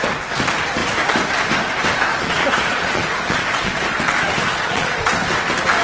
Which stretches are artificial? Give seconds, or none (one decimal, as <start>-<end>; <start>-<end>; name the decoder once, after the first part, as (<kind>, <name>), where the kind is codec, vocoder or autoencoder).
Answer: 2.1-3.8 (vocoder, Vocos); 4.5-5.1